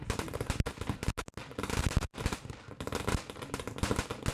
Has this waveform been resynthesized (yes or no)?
no